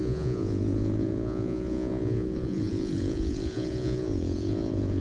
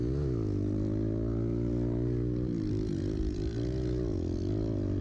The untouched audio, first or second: second